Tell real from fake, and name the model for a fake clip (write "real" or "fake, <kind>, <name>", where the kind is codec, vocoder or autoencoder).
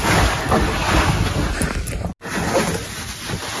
real